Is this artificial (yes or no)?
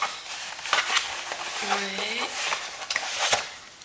no